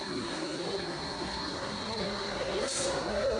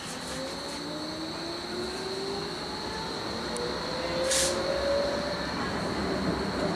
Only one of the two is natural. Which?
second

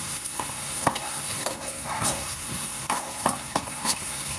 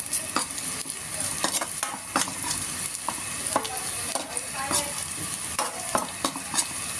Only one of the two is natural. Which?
second